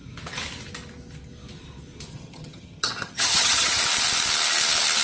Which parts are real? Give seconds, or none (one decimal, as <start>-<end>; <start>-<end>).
0.0-2.1; 3.8-5.0